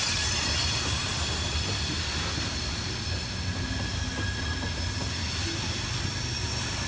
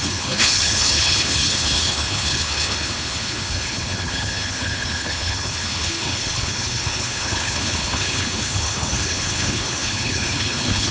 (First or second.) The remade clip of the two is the second